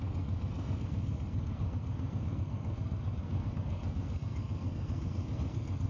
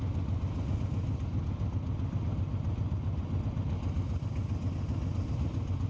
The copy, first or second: first